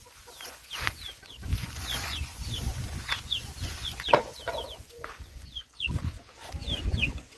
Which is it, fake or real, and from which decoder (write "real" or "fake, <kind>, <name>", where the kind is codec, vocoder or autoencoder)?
fake, vocoder, Vocos